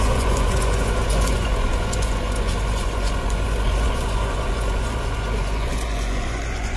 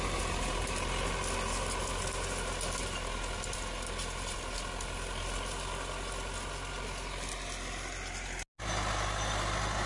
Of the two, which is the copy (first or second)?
first